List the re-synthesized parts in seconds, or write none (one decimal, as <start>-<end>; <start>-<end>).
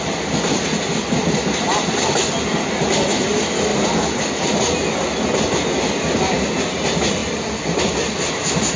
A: none